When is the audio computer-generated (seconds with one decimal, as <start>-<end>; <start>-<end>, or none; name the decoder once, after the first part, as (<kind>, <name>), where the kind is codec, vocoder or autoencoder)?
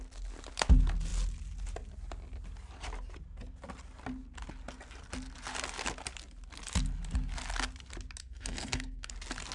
8.2-9.1 (codec, SNAC)